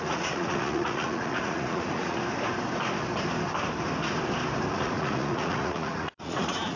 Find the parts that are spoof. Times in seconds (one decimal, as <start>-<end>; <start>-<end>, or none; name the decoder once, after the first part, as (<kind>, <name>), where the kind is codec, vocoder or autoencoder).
0.0-2.2 (vocoder, Vocos); 4.7-6.8